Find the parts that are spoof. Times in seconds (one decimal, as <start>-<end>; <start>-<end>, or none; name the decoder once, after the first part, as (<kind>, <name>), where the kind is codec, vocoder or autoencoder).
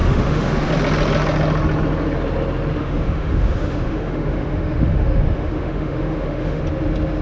0.0-0.7 (autoencoder, DAC-VAE); 2.8-6.6